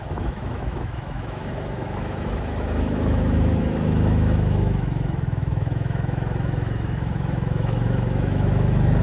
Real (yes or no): no